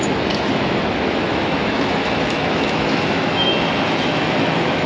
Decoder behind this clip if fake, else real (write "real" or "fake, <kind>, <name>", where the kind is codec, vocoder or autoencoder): fake, autoencoder, DAC-VAE